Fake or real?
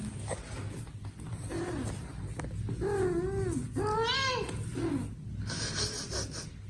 real